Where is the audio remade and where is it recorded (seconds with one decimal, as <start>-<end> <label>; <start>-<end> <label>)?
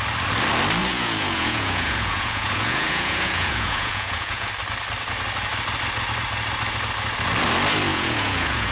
0.0-0.8 recorded; 0.8-4.5 remade; 4.5-7.9 recorded; 7.9-8.7 remade